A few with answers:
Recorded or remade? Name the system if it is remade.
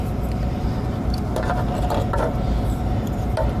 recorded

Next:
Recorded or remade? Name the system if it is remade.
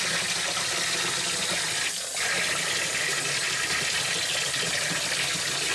recorded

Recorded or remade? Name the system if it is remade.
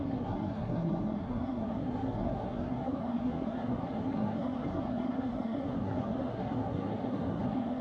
remade, codec, SNAC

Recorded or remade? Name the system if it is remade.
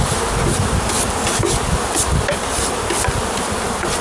recorded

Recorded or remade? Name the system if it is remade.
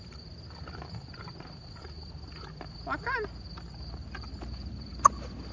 recorded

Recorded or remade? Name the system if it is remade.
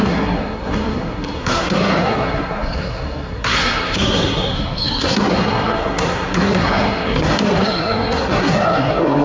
remade, codec, SNAC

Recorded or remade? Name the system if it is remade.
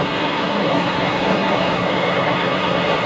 remade, codec, SNAC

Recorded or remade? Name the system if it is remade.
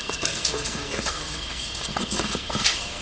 remade, codec, SNAC